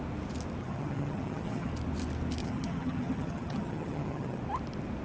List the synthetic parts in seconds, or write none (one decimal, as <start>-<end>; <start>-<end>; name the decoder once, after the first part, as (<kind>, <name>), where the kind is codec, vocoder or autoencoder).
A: 0.6-1.7 (vocoder, HiFi-GAN); 2.4-4.4